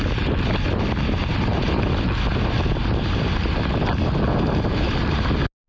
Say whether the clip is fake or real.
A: real